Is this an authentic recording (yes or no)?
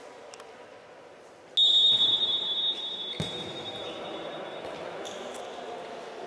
yes